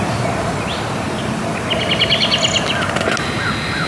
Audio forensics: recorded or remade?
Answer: recorded